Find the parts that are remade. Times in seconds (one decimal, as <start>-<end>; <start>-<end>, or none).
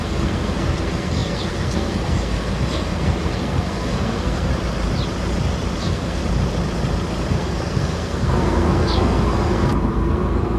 0.0-4.5; 5.8-6.2; 7.3-10.6